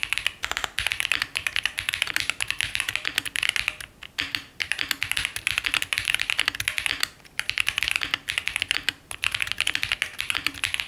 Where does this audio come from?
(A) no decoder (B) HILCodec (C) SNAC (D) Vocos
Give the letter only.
A